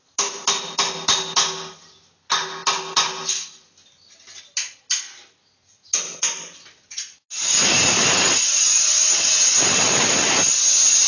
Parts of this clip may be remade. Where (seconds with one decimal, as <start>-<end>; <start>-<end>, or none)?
none